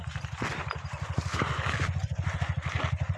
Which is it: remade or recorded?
remade